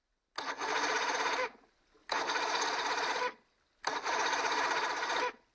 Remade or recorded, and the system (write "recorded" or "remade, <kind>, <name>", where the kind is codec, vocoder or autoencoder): recorded